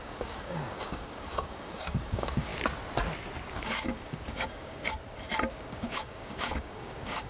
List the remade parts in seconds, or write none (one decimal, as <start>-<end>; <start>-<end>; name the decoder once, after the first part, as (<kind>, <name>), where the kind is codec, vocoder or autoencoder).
0.0-2.5 (codec, DAC); 3.5-4.9; 5.5-7.3